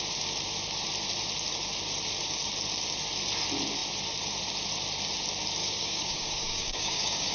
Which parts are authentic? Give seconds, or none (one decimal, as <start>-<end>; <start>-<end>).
0.0-5.6